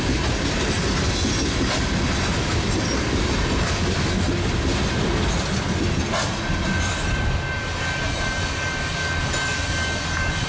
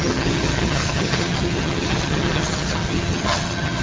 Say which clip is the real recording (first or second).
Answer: first